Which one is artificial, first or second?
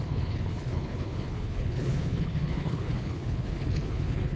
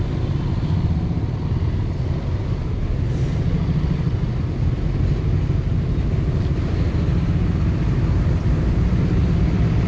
first